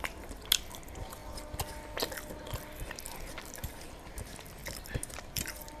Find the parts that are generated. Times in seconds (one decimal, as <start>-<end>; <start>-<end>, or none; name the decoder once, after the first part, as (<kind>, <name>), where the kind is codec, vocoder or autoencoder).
none